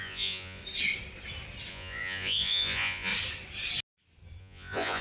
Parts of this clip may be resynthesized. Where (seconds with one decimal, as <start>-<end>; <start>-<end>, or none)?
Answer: 0.0-0.6; 1.7-3.1; 4.4-5.0